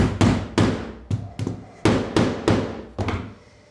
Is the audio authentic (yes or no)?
yes